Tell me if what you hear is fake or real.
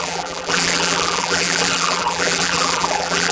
fake